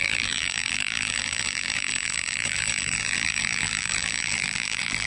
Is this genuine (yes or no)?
no